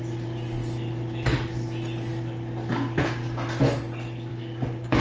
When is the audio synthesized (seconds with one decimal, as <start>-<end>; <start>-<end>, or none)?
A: 4.3-5.0